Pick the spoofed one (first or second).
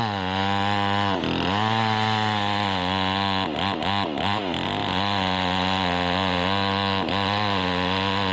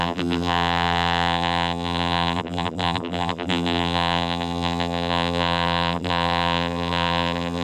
second